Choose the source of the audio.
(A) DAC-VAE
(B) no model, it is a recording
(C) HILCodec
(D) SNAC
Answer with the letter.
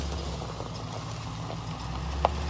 B